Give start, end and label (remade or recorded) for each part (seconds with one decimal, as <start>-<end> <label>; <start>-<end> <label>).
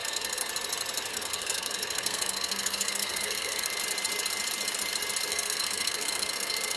0.0-0.5 remade; 0.5-1.1 recorded; 1.1-3.8 remade; 3.8-5.3 recorded; 5.3-6.8 remade